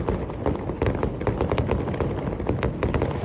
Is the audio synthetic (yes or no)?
no